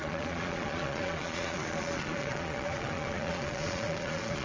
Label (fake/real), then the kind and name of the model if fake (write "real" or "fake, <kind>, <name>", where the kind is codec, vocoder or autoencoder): fake, vocoder, Vocos